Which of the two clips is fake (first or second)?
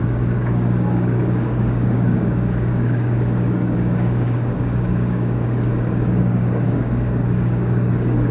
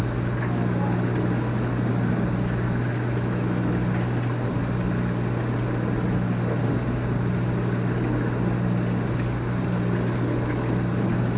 first